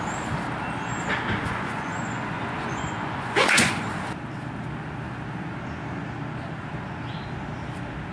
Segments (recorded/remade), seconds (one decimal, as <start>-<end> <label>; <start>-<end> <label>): 0.0-1.4 recorded; 1.4-3.9 remade; 3.9-8.1 recorded